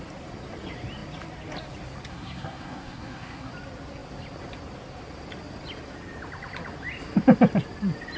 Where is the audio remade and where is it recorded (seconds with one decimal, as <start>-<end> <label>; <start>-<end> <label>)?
0.0-2.1 recorded; 2.1-3.5 remade; 3.5-8.2 recorded